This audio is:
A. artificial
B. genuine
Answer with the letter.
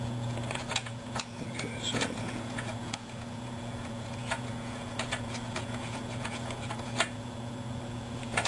A